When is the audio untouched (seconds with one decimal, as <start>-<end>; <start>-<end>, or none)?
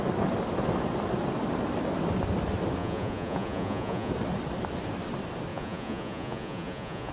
0.0-2.8; 4.1-5.5